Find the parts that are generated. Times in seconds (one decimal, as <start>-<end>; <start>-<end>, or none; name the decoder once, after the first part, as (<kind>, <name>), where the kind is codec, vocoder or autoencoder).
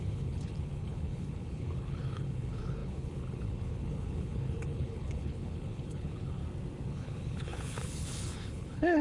0.0-6.4 (codec, HILCodec); 6.9-9.0